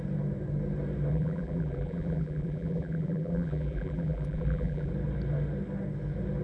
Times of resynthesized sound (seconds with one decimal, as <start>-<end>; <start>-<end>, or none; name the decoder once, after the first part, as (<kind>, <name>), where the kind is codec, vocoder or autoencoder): 1.1-4.9 (vocoder, BigVGAN v2)